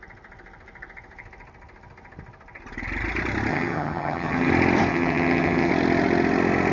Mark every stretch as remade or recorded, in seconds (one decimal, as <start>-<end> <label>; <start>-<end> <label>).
0.0-3.5 recorded; 3.5-4.5 remade; 4.5-4.9 recorded; 4.9-5.7 remade; 5.7-6.7 recorded